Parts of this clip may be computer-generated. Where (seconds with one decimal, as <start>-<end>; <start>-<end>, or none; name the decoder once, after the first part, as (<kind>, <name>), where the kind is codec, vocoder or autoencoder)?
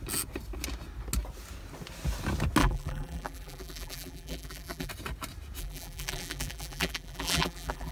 2.6-4.9 (vocoder, BigVGAN v2); 5.6-7.9